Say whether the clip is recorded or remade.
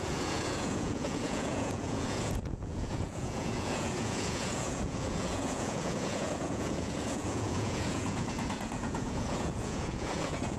remade